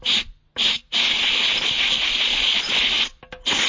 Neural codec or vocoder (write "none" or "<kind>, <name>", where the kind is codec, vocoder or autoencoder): none